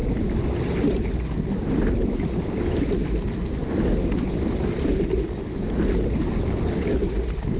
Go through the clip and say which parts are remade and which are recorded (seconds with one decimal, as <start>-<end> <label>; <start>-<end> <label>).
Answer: 0.0-7.6 recorded